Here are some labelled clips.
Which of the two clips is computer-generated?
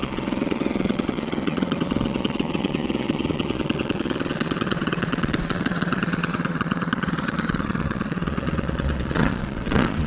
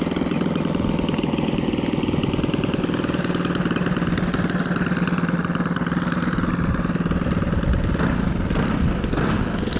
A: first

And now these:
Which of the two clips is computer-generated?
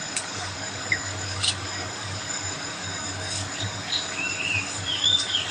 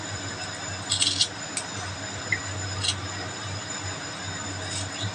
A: first